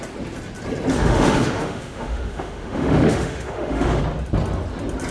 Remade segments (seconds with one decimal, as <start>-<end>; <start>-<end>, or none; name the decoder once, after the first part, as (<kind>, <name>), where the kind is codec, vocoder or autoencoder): 0.9-4.0 (autoencoder, DAC-VAE)